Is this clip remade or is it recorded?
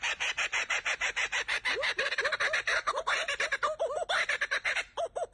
recorded